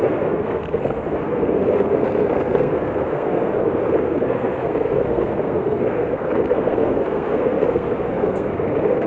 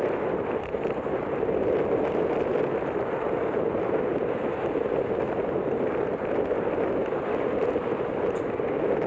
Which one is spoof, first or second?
first